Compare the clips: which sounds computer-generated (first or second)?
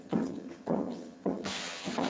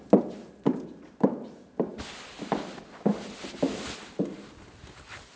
first